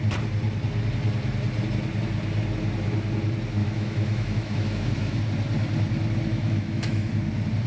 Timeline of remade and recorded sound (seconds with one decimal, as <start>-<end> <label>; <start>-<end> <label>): 0.0-3.6 recorded; 3.6-5.2 remade; 5.2-6.3 recorded; 6.3-7.1 remade; 7.1-7.7 recorded